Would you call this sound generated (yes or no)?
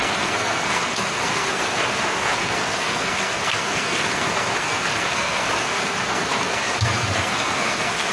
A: yes